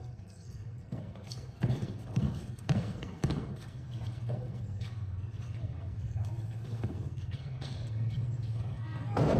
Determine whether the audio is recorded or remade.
remade